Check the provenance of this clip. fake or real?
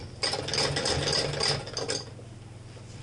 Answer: real